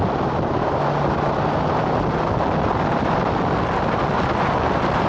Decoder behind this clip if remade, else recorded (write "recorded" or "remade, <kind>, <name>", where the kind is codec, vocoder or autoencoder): recorded